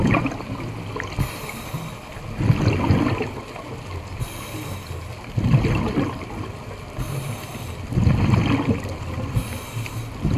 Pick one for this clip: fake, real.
real